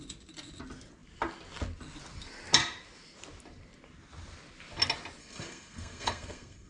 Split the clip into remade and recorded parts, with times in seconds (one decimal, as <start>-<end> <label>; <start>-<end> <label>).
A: 0.0-5.2 recorded; 5.2-6.7 remade